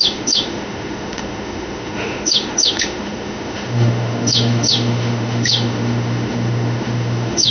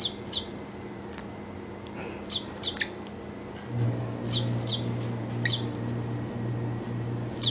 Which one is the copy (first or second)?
first